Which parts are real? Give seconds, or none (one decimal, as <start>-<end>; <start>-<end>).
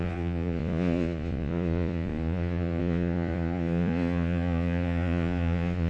none